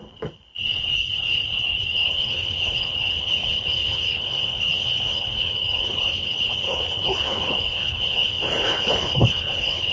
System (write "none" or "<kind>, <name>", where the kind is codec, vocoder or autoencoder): codec, HILCodec